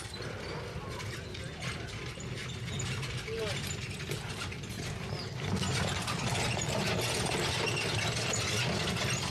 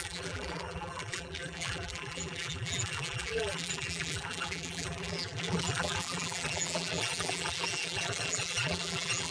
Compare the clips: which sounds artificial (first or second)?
second